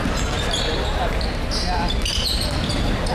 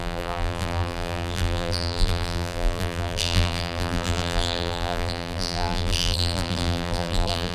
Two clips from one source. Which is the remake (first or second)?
second